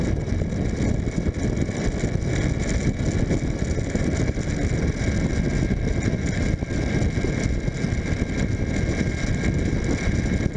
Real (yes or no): yes